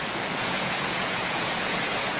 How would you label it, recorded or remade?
remade